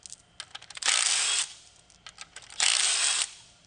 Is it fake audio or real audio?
real